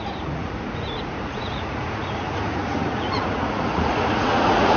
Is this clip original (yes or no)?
no